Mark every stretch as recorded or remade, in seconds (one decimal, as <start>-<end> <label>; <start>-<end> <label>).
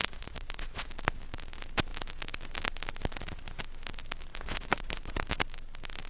0.0-0.9 remade; 0.9-4.3 recorded; 4.3-5.2 remade; 5.2-6.1 recorded